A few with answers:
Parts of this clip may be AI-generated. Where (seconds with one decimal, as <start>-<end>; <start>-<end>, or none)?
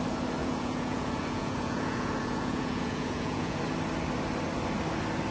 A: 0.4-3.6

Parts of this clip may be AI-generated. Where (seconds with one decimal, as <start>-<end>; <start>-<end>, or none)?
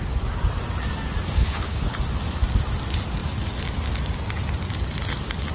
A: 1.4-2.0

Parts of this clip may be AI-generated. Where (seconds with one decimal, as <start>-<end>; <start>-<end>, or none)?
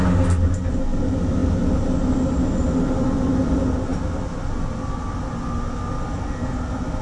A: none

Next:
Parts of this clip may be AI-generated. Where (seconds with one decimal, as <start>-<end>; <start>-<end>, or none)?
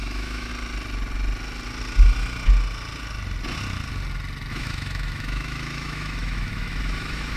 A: 0.0-0.5; 4.5-7.4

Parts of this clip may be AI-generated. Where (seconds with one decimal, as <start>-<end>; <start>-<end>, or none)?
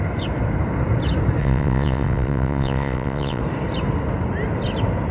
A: 1.4-3.4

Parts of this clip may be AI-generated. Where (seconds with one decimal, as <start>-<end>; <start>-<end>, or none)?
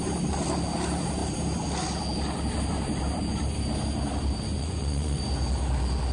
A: 4.5-5.2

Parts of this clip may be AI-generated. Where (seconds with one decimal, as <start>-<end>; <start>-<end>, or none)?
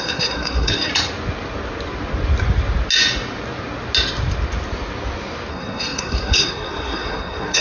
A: 0.0-0.9; 5.5-7.6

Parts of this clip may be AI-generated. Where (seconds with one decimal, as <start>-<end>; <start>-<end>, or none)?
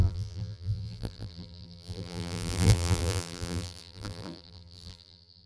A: 0.0-5.5